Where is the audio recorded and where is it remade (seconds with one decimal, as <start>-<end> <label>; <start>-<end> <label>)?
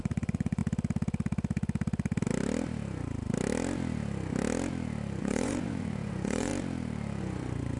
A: 0.0-0.6 remade; 0.6-5.2 recorded; 5.2-6.5 remade; 6.5-7.2 recorded; 7.2-7.8 remade